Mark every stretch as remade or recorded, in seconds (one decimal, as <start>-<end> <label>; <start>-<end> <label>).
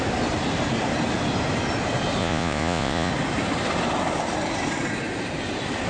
0.0-2.2 recorded; 2.2-3.1 remade; 3.1-5.9 recorded